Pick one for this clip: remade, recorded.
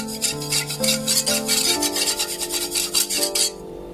recorded